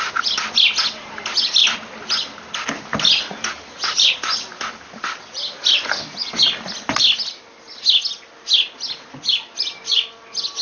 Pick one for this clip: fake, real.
real